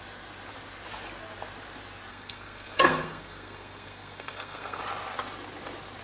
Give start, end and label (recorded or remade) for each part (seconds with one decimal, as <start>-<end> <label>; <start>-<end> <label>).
0.0-2.1 recorded; 2.1-4.8 remade; 4.8-6.0 recorded